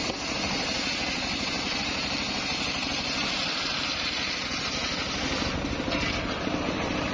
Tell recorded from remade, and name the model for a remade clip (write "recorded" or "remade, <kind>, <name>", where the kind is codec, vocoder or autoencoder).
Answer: recorded